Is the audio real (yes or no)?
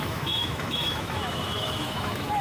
no